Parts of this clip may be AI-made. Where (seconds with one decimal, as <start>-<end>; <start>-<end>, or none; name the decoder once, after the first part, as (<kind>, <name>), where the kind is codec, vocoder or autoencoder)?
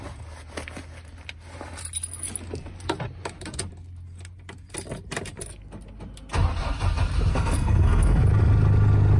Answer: 7.3-8.2 (codec, SNAC)